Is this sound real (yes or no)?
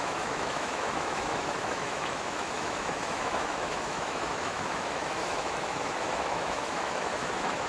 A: no